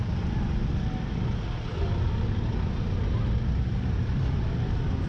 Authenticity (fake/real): real